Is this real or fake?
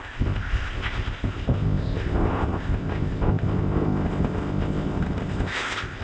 fake